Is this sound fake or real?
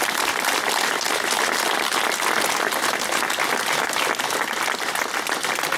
real